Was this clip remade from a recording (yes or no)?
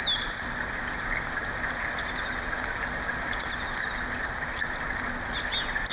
no